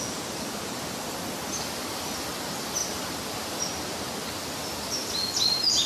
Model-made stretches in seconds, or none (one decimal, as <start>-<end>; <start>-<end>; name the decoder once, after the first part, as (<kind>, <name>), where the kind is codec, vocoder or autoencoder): none